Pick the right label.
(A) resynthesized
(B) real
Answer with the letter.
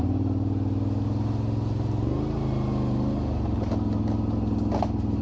B